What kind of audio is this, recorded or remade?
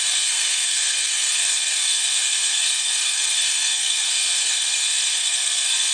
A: remade